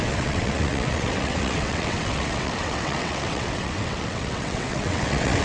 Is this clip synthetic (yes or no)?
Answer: yes